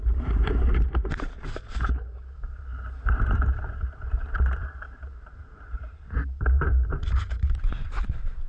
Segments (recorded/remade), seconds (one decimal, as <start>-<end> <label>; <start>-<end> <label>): 0.0-8.5 remade